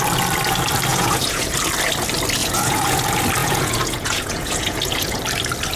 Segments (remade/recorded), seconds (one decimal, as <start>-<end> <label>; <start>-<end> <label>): 0.0-0.9 recorded; 0.9-1.5 remade; 1.5-2.4 recorded; 2.4-3.0 remade; 3.0-3.4 recorded; 3.4-5.2 remade; 5.2-5.8 recorded